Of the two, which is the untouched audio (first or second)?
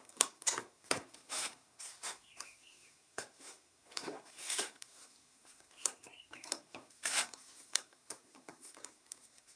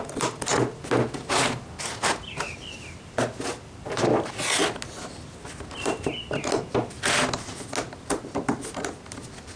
second